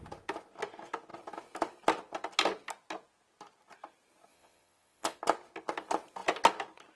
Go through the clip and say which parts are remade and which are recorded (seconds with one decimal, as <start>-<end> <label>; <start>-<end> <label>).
0.0-4.3 recorded; 4.3-5.2 remade; 5.2-7.0 recorded

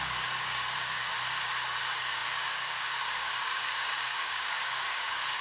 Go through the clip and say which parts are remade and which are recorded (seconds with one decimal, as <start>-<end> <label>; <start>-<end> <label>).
0.0-1.1 remade; 1.1-1.8 recorded; 1.8-5.4 remade